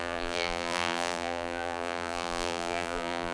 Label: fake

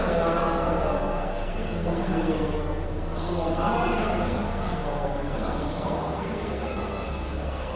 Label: fake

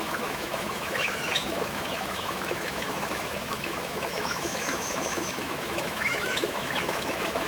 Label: fake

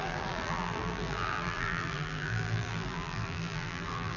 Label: fake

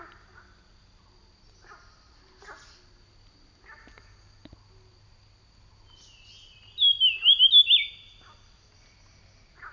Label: real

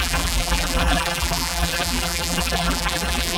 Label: fake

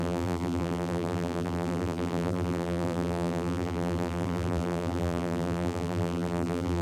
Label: fake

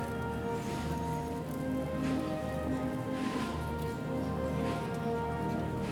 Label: real